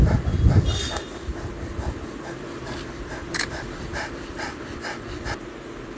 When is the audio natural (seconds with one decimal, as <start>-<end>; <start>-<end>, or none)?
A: 0.0-3.3